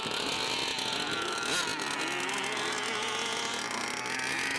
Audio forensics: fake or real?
real